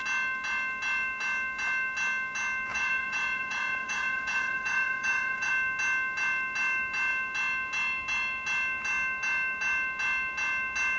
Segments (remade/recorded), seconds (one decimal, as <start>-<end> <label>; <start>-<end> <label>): 0.0-2.7 recorded; 2.7-5.5 remade; 5.5-11.0 recorded